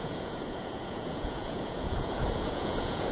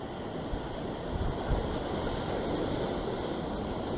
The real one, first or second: second